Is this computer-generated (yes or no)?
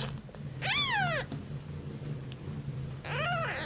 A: no